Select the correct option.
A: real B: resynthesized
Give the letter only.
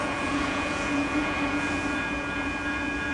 B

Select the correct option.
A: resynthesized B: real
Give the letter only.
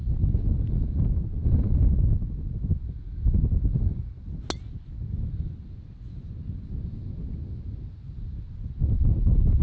B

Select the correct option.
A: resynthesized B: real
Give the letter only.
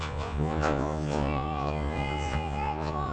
A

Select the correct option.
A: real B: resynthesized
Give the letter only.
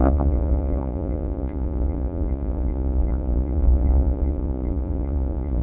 B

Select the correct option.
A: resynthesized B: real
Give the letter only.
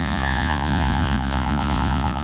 A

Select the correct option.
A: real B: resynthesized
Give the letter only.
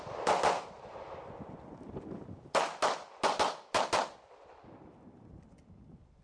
A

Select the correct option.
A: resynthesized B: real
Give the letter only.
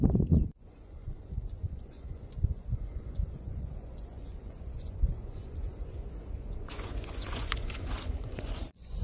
A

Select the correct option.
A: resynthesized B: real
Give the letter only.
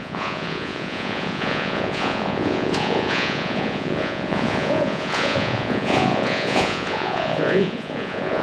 A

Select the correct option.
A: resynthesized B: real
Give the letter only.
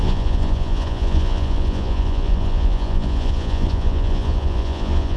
A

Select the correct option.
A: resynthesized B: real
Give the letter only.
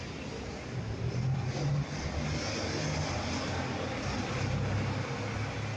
B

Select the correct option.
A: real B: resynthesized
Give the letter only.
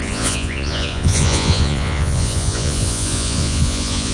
B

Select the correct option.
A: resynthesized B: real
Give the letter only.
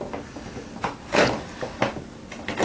B